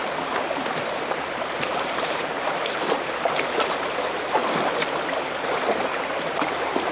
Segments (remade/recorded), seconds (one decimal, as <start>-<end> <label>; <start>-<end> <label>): 0.0-4.4 remade; 4.4-5.8 recorded; 5.8-6.9 remade

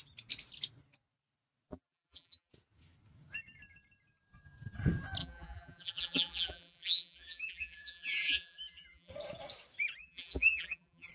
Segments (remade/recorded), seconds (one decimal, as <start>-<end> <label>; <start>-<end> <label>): 0.0-1.7 recorded; 1.7-2.5 remade; 2.5-5.2 recorded; 5.2-9.1 remade; 9.1-10.0 recorded; 10.0-11.1 remade

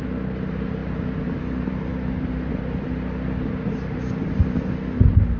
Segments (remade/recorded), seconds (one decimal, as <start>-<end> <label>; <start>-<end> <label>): 0.0-0.8 recorded; 0.8-1.4 remade; 1.4-5.4 recorded

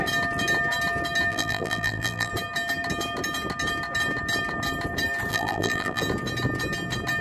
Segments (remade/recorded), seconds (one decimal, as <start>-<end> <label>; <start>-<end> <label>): 0.0-1.3 recorded; 1.3-2.3 remade; 2.3-5.3 recorded; 5.3-6.0 remade; 6.0-7.2 recorded

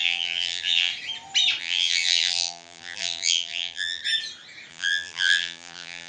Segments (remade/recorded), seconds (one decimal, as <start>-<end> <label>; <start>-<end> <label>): 0.0-0.9 remade; 0.9-1.6 recorded; 1.6-4.0 remade; 4.0-4.7 recorded; 4.7-6.1 remade